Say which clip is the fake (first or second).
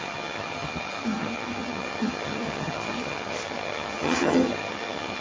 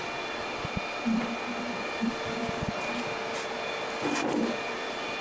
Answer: first